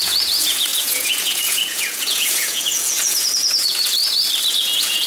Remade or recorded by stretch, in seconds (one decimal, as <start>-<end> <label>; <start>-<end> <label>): 0.0-4.0 remade; 4.0-4.5 recorded; 4.5-5.1 remade